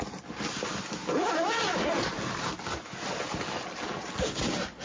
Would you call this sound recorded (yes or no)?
yes